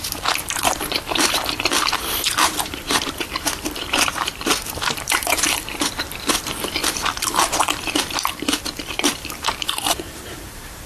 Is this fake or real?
fake